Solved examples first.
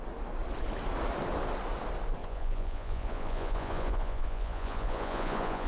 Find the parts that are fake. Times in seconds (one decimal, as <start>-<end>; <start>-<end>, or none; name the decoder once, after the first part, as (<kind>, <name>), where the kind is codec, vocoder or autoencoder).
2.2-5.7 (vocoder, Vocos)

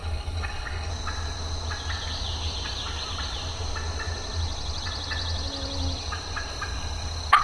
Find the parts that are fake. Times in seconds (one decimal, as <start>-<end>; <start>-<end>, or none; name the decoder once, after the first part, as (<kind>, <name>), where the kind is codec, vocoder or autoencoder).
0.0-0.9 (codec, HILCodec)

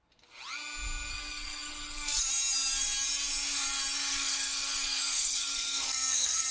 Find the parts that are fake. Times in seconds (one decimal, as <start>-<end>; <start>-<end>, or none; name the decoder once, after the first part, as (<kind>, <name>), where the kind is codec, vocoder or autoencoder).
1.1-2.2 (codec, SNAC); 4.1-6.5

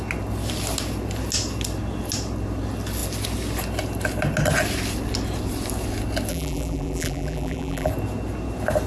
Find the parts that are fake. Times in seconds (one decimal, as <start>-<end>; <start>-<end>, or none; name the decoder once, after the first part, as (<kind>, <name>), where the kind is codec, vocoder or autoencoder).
6.3-7.9 (vocoder, BigVGAN v2)